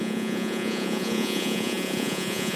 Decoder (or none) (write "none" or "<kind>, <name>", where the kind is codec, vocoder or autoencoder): vocoder, Vocos